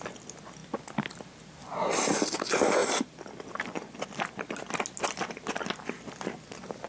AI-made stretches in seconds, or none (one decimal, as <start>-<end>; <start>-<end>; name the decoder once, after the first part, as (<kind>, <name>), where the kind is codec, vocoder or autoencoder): none